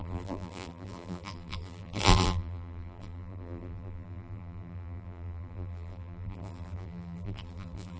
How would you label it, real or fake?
fake